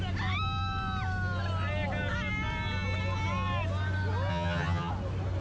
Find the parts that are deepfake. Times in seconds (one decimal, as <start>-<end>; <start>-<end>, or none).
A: 4.3-4.9